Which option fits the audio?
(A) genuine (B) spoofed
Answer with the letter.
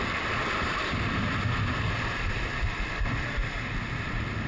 A